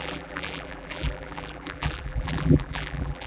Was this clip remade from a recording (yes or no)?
yes